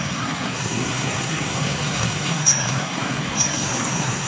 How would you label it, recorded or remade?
remade